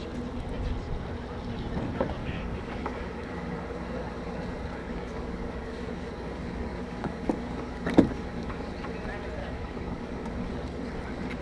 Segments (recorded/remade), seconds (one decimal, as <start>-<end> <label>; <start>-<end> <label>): 0.0-2.2 recorded; 2.2-3.6 remade; 3.6-4.8 recorded; 4.8-8.7 remade; 8.7-9.4 recorded; 9.4-10.3 remade; 10.3-11.4 recorded